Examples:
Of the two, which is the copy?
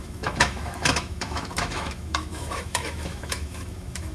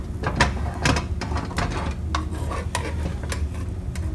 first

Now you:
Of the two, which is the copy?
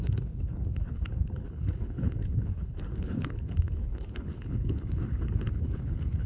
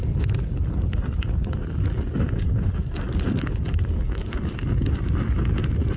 first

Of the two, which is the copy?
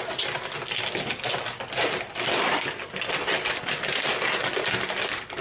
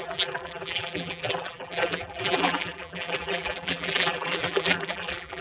second